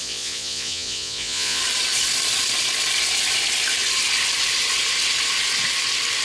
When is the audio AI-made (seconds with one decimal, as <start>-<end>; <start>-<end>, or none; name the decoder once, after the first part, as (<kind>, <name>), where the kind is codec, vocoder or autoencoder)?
0.0-1.6 (vocoder, Vocos)